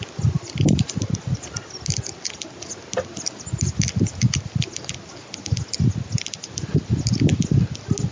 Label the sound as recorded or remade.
recorded